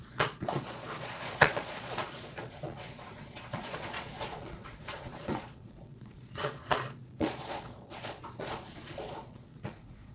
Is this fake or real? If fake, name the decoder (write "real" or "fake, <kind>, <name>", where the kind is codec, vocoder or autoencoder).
fake, vocoder, Vocos